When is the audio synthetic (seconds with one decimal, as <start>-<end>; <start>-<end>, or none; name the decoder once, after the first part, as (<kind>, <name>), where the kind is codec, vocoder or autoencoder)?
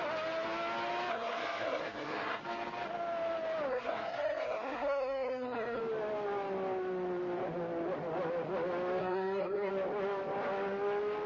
1.1-2.4 (codec, SNAC); 3.7-5.8; 9.0-9.7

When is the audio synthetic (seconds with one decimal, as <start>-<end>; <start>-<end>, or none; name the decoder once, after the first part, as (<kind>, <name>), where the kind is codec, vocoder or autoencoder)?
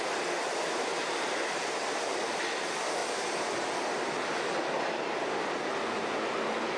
none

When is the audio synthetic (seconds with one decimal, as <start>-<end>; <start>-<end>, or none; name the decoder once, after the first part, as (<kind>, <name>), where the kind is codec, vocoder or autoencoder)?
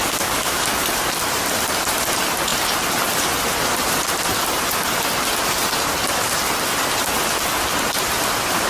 0.0-0.7 (codec, DAC)